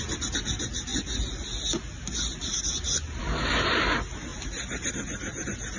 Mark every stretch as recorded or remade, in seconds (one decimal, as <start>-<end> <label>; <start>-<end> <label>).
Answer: 0.0-5.8 recorded